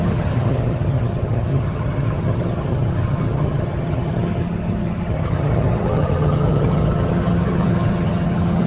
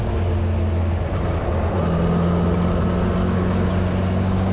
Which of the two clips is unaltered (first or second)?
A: second